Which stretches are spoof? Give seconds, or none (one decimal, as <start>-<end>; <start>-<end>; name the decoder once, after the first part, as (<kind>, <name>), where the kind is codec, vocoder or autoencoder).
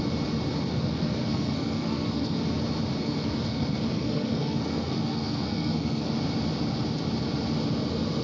0.7-2.4 (codec, SNAC); 3.0-6.1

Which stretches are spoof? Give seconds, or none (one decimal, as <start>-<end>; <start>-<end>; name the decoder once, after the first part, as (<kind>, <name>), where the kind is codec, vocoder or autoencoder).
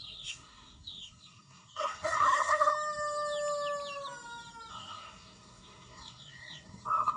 0.0-2.7 (codec, SNAC); 4.7-7.2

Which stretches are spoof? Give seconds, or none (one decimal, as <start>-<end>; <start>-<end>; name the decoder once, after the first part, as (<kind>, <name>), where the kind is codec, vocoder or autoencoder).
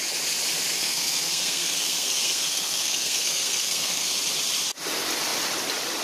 0.8-4.2 (codec, SNAC)